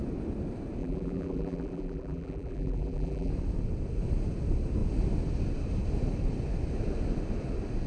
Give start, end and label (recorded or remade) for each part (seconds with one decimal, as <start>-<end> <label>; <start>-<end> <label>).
0.0-0.8 recorded; 0.8-3.3 remade; 3.3-7.9 recorded